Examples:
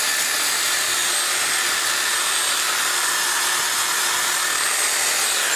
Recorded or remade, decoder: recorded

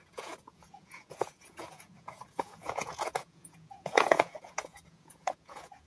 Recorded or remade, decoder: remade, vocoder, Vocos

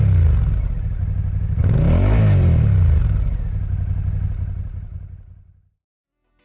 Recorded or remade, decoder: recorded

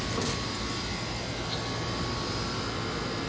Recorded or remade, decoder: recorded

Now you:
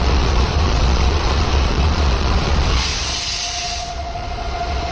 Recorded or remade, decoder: remade, vocoder, Vocos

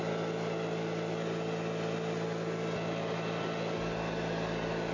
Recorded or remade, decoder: recorded